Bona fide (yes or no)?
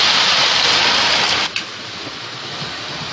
yes